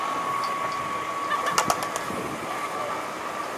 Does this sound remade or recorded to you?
recorded